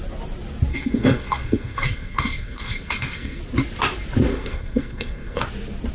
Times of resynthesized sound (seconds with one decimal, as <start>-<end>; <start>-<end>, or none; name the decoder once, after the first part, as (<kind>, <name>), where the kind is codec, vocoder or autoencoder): 0.7-3.4 (codec, SNAC); 4.3-5.4